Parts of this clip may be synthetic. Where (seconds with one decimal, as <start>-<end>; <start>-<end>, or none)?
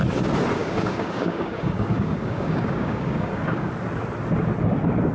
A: 0.6-3.7